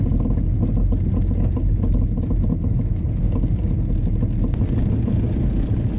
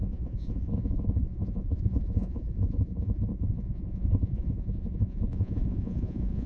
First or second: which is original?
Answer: first